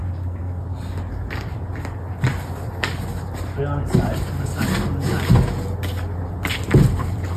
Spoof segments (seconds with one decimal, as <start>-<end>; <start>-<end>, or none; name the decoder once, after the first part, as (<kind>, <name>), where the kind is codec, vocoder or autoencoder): 0.0-0.6 (codec, SNAC)